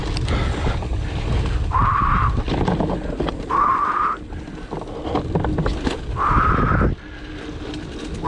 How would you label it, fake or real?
real